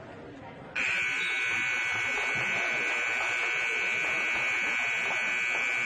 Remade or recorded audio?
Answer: recorded